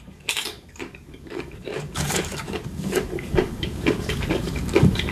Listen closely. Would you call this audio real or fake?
fake